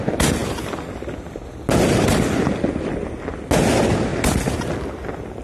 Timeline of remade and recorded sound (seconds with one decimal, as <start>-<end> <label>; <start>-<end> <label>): 0.0-5.4 recorded

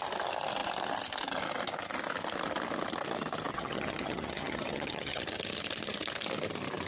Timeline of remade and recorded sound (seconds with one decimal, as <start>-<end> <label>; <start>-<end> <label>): 0.0-3.5 recorded; 3.5-5.2 remade; 5.2-6.9 recorded

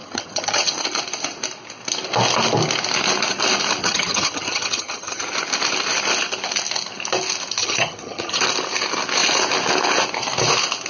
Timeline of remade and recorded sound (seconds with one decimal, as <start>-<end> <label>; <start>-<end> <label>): 0.0-0.7 remade; 0.7-3.8 recorded; 3.8-5.3 remade; 5.3-7.6 recorded; 7.6-8.4 remade; 8.4-10.9 recorded